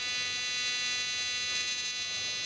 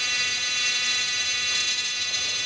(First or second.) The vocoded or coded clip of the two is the second